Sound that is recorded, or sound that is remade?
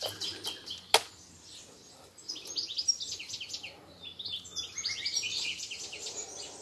recorded